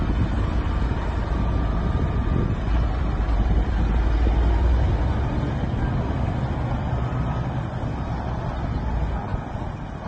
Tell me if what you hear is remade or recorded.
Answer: recorded